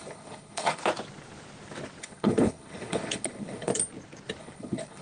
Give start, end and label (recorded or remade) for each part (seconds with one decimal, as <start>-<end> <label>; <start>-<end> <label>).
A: 0.0-0.8 remade; 0.8-2.0 recorded; 2.0-3.7 remade; 3.7-4.4 recorded; 4.4-5.0 remade